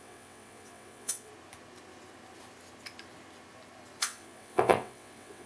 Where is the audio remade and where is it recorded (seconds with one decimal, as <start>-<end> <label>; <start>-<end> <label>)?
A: 0.0-1.3 remade; 1.3-4.0 recorded; 4.0-5.5 remade